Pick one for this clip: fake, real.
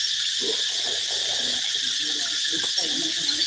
real